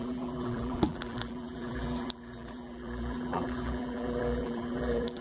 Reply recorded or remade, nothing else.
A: remade